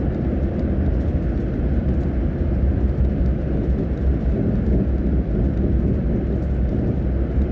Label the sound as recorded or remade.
recorded